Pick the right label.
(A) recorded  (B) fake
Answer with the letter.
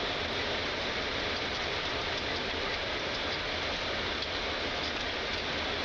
A